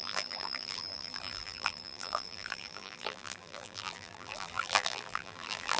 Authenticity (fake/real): fake